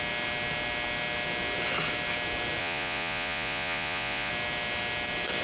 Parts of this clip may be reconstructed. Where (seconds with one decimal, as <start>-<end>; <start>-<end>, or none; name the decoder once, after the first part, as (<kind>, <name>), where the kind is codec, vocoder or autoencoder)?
2.6-4.3 (vocoder, Vocos)